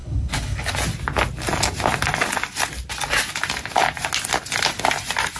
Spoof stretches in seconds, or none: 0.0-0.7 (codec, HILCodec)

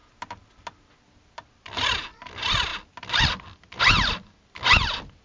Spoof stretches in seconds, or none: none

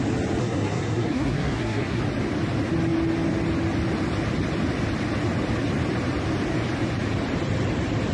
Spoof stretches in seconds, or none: 0.4-2.0 (codec, SNAC)

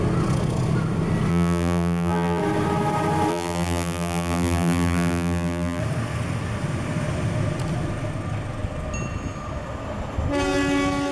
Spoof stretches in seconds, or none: 1.3-2.4 (vocoder, BigVGAN v2); 3.3-5.8

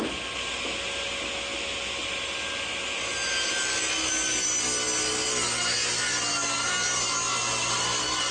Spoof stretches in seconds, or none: none

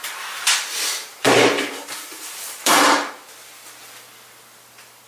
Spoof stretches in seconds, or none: 0.0-3.1 (vocoder, BigVGAN v2)